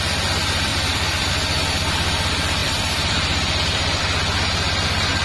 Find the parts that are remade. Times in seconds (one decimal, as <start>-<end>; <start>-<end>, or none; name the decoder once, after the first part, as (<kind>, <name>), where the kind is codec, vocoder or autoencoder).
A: 0.7-1.3 (vocoder, BigVGAN v2); 2.6-4.0